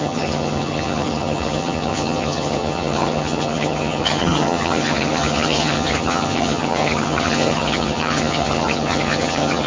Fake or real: fake